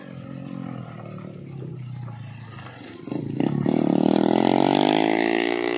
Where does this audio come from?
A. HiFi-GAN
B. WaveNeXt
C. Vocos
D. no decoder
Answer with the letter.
D